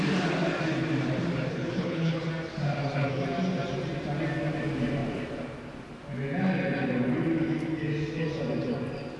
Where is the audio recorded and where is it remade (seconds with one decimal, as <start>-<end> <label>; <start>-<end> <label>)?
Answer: 0.0-1.5 recorded; 1.5-2.3 remade; 2.3-9.2 recorded